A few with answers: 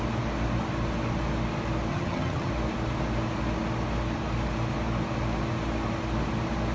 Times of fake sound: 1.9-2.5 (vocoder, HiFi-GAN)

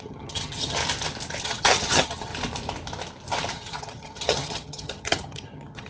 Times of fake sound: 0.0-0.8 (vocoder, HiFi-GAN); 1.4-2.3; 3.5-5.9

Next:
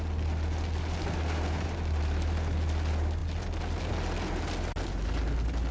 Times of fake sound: none

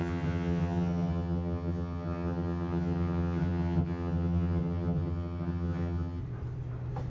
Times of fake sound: 0.0-6.2 (vocoder, HiFi-GAN)

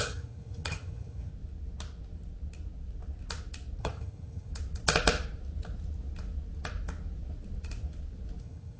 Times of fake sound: 0.0-1.3 (vocoder, HiFi-GAN); 3.8-4.5; 8.4-8.8

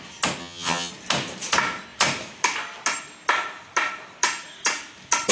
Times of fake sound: 0.4-0.9 (vocoder, HiFi-GAN)